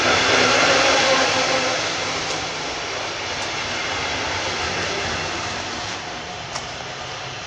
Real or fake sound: real